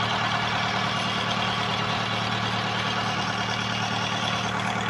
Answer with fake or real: real